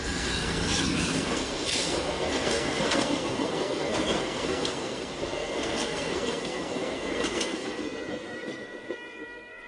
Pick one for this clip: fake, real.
fake